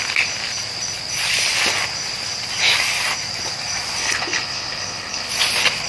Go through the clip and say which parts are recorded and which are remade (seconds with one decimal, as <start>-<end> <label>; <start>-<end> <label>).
0.0-4.0 recorded; 4.0-5.3 remade; 5.3-5.9 recorded